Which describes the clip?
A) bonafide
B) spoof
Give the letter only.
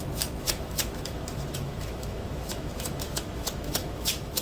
B